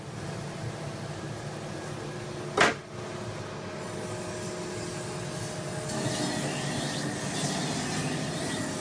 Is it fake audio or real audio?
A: real